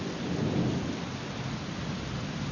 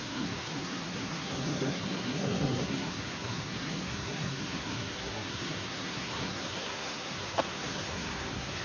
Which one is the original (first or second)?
first